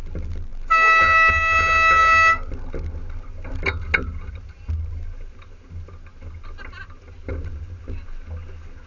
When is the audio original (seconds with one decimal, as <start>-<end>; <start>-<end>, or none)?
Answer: 0.0-8.9

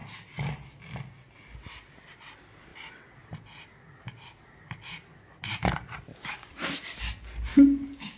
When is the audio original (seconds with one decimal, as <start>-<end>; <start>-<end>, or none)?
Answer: 0.0-6.1; 6.8-7.5

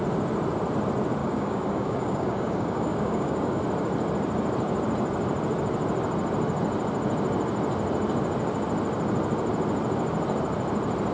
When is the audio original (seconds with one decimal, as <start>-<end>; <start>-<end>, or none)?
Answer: 0.0-1.2; 3.6-11.1

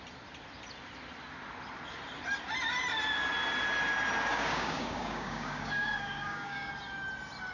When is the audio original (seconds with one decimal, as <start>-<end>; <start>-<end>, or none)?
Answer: 0.0-4.3; 6.7-7.5

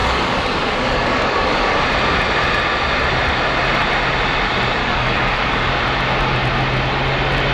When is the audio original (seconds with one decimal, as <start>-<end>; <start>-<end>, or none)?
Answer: 1.8-4.8; 5.7-7.5